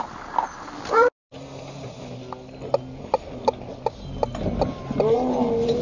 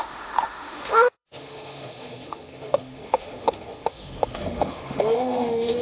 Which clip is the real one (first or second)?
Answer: first